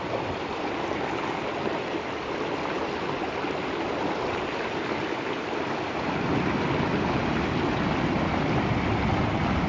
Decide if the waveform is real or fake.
real